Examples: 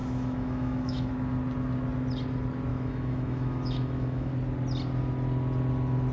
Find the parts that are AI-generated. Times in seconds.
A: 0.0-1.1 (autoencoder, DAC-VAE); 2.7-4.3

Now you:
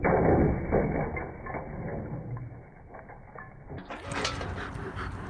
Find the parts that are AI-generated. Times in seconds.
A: none

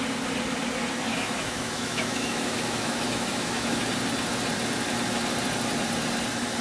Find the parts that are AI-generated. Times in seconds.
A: 1.1-3.8 (autoencoder, DAC-VAE)

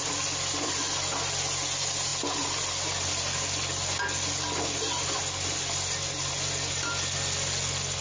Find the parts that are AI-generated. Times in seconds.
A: none

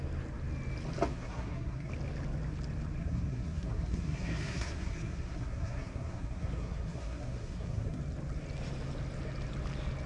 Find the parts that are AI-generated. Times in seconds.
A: 1.1-1.9 (codec, SNAC); 3.0-8.0